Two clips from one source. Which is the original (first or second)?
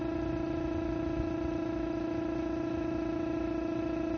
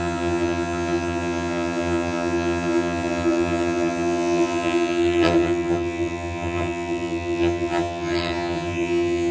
first